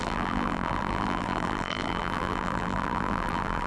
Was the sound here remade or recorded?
remade